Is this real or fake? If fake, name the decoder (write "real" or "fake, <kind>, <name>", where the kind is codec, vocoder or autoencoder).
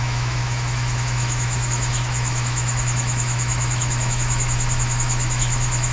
fake, autoencoder, DAC-VAE